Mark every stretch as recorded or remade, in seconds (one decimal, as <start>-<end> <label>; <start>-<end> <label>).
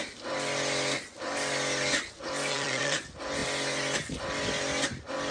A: 0.0-2.5 recorded; 2.5-3.0 remade; 3.0-5.3 recorded